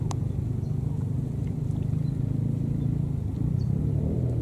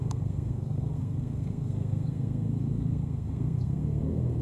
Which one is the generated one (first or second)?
second